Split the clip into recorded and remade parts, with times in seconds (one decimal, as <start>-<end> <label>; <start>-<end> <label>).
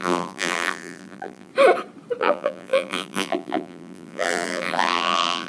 0.0-1.5 remade; 1.5-2.2 recorded; 2.2-5.5 remade